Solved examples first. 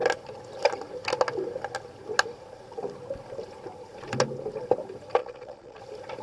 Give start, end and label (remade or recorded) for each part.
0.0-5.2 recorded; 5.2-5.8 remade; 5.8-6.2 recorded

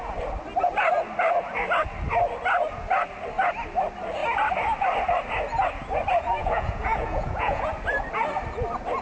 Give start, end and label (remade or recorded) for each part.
0.0-6.4 recorded; 6.4-7.7 remade; 7.7-9.0 recorded

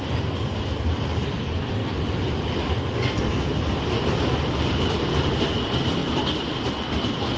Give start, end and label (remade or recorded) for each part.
0.0-7.4 recorded

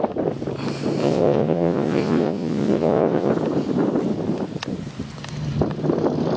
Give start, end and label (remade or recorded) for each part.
0.0-1.0 recorded; 1.0-3.3 remade; 3.3-6.4 recorded

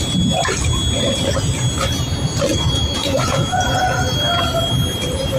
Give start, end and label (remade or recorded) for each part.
0.0-2.5 recorded; 2.5-4.0 remade; 4.0-5.4 recorded

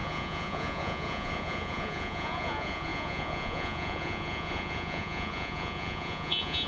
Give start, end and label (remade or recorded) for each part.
0.0-6.7 remade

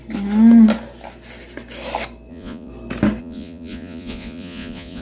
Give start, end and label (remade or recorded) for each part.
0.0-2.3 recorded; 2.3-2.7 remade; 2.7-3.2 recorded; 3.2-5.0 remade

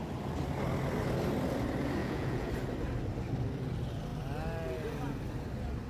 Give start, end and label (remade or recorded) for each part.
0.0-2.0 recorded; 2.0-2.5 remade; 2.5-5.9 recorded